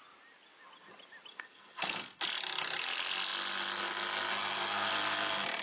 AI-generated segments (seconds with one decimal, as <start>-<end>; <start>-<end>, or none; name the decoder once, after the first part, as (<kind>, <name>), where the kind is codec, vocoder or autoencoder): 1.3-2.2 (codec, SNAC); 4.3-4.9